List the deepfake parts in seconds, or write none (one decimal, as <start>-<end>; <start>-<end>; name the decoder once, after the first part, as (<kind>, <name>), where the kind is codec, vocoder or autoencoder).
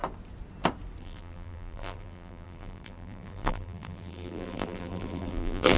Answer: 1.0-5.8 (vocoder, BigVGAN v2)